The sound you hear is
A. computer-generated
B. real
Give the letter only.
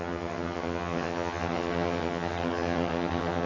A